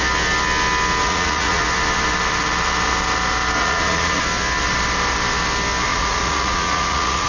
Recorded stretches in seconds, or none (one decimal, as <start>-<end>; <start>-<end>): 0.0-1.0; 1.6-3.6; 4.2-5.9